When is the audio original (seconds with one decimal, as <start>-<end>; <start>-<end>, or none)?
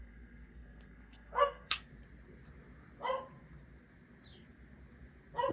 1.9-5.5